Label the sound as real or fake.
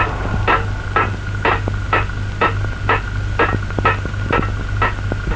real